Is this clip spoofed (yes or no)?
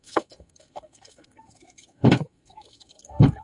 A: yes